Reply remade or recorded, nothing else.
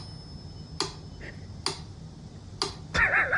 recorded